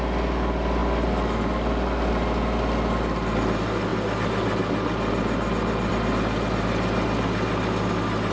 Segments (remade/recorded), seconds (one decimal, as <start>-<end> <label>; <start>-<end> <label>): 0.0-8.3 recorded